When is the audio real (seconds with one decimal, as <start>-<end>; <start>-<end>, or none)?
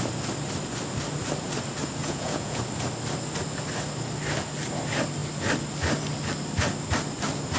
0.0-2.0; 2.6-7.6